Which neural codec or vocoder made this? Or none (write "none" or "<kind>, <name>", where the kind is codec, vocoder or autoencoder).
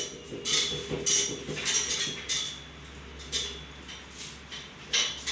none